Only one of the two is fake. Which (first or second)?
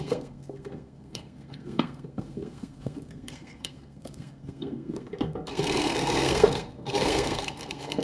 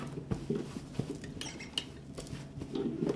first